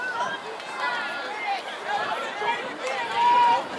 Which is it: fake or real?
fake